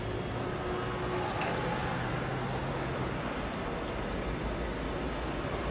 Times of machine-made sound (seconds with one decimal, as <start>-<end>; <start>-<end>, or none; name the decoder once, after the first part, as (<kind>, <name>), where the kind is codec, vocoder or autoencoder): 1.8-2.7 (vocoder, BigVGAN v2)